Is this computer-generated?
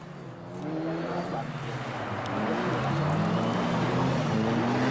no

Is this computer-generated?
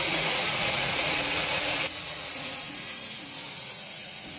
yes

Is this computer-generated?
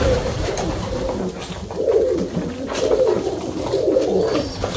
no